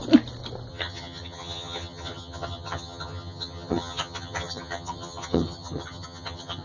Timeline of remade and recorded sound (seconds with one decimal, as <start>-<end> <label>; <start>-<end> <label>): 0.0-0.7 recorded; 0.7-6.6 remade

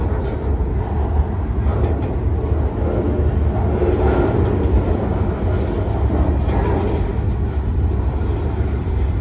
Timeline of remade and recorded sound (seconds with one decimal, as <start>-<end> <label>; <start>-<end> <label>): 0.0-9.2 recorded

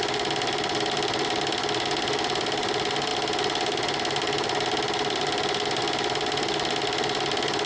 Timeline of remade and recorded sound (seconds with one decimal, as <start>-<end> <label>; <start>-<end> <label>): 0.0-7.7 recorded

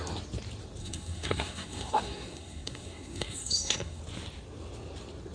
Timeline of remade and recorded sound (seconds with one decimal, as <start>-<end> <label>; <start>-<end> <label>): 0.0-0.8 recorded; 0.8-4.0 remade; 4.0-5.3 recorded